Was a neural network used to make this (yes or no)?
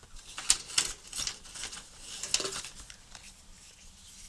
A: no